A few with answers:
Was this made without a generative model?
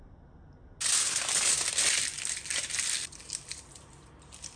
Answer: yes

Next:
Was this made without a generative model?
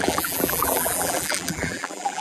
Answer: no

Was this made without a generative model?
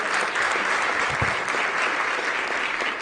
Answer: yes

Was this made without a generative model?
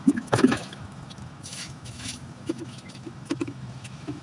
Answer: no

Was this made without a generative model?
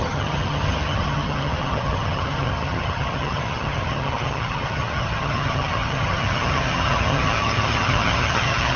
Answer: no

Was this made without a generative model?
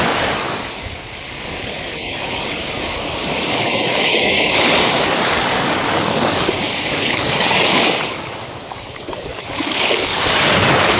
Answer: no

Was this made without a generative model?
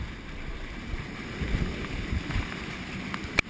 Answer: yes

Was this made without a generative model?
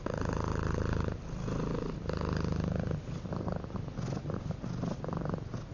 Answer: yes